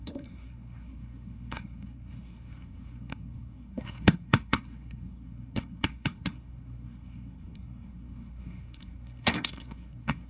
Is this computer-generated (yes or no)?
yes